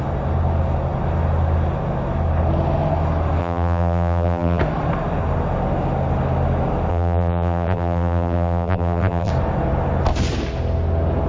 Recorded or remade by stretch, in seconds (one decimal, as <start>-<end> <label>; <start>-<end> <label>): 0.0-3.4 recorded; 3.4-4.6 remade; 4.6-6.9 recorded; 6.9-9.3 remade; 9.3-11.3 recorded

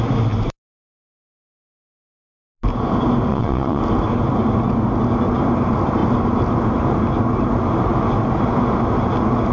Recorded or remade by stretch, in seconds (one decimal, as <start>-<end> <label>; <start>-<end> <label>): 0.0-3.3 recorded; 3.3-3.8 remade; 3.8-9.5 recorded

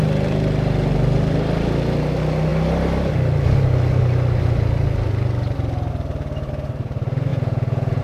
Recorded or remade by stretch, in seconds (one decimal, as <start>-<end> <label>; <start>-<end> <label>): 0.0-7.3 recorded; 7.3-8.0 remade